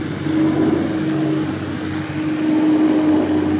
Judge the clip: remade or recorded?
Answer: recorded